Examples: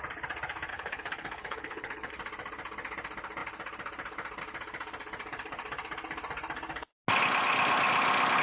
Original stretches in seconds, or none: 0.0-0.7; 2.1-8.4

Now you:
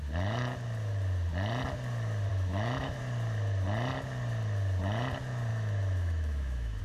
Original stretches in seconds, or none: 0.0-2.3; 3.0-5.5

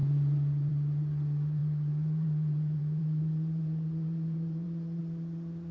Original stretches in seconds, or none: 0.0-1.6; 5.0-5.7